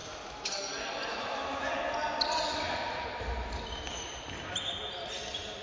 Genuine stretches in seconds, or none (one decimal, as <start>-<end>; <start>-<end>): 0.5-1.1; 1.7-5.6